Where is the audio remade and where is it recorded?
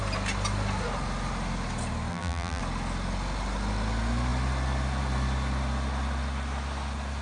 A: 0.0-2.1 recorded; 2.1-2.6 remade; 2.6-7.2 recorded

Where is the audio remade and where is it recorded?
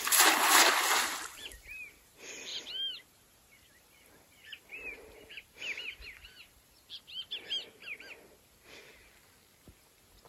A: 0.0-2.5 recorded; 2.5-6.9 remade; 6.9-10.3 recorded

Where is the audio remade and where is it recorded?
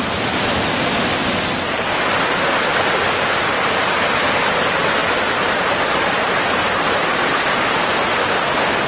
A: 0.0-8.9 recorded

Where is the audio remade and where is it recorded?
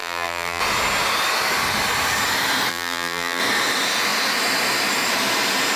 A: 0.0-0.6 remade; 0.6-2.7 recorded; 2.7-3.4 remade; 3.4-5.8 recorded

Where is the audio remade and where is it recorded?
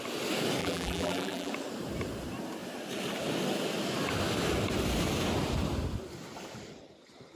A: 0.0-0.6 recorded; 0.6-1.5 remade; 1.5-7.4 recorded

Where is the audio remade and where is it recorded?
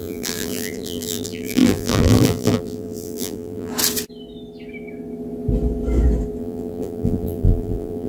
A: 0.0-3.7 remade; 3.7-6.4 recorded; 6.4-8.1 remade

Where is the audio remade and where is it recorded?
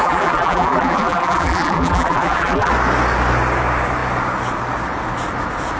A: 0.0-2.7 remade; 2.7-5.8 recorded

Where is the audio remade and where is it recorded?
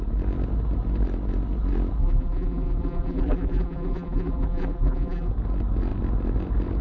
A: 0.0-2.0 recorded; 2.0-5.3 remade; 5.3-6.8 recorded